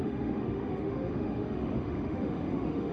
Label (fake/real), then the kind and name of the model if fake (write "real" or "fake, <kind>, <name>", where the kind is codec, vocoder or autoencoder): fake, autoencoder, DAC-VAE